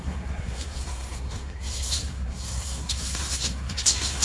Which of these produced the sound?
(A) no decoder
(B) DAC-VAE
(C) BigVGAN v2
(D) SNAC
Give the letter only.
D